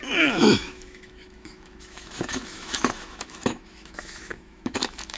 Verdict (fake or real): fake